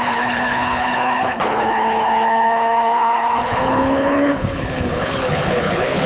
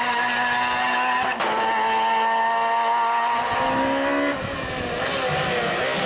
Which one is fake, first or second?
first